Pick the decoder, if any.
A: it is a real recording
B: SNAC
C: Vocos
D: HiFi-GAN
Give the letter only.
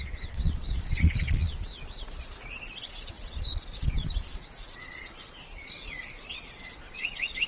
C